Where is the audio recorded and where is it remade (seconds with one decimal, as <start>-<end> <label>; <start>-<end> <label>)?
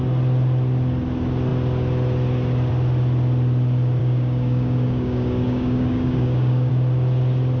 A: 0.0-4.0 recorded; 4.0-6.7 remade; 6.7-7.6 recorded